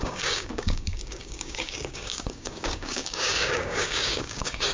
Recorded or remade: remade